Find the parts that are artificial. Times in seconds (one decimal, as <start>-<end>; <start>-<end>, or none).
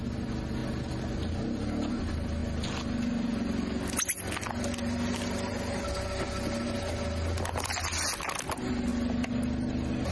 none